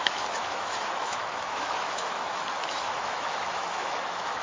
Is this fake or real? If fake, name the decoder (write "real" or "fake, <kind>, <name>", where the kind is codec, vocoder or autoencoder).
fake, autoencoder, DAC-VAE